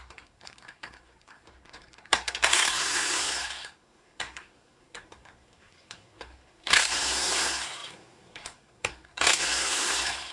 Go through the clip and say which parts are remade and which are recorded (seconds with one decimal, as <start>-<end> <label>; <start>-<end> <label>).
0.0-10.3 remade